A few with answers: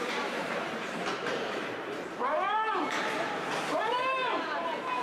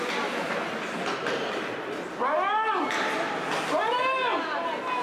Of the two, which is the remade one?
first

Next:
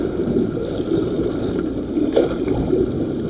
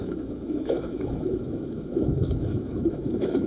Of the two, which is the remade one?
second